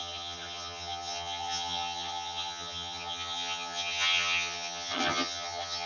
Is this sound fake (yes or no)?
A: yes